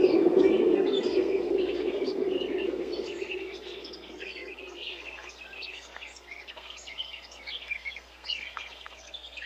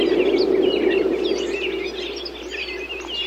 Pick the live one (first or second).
second